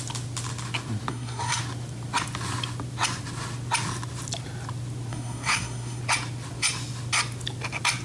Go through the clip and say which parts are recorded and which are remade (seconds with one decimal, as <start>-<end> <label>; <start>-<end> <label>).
0.0-1.1 recorded; 1.1-1.6 remade; 1.6-5.1 recorded; 5.1-6.0 remade; 6.0-8.0 recorded